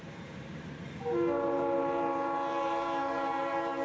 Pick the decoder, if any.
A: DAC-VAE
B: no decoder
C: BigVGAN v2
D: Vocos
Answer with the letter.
C